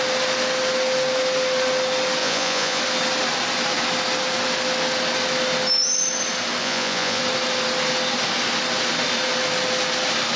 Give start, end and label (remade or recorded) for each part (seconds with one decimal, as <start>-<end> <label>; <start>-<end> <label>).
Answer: 0.0-2.2 recorded; 2.2-2.8 remade; 2.8-6.6 recorded; 6.6-7.2 remade; 7.2-10.4 recorded